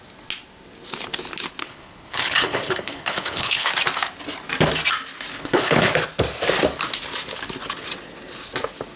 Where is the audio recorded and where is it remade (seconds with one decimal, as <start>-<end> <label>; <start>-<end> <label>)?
0.0-1.6 recorded; 1.6-3.7 remade; 3.7-5.3 recorded; 5.3-5.9 remade; 5.9-9.0 recorded